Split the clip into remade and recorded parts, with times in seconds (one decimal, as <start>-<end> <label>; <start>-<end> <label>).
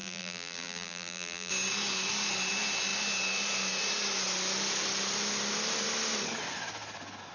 0.0-1.5 remade; 1.5-7.3 recorded